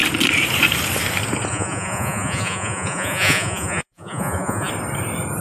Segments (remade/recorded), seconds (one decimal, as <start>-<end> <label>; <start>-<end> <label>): 0.0-1.5 recorded; 1.5-4.7 remade; 4.7-5.4 recorded